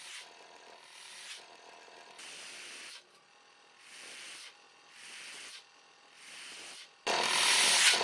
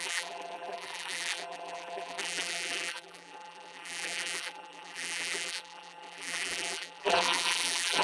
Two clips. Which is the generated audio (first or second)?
second